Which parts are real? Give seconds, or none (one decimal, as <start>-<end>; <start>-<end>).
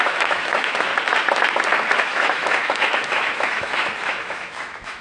0.9-2.0